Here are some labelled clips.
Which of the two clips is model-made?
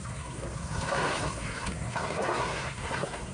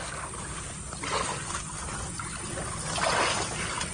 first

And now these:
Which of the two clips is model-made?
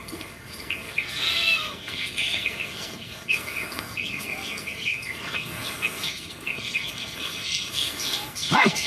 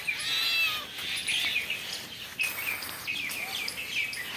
first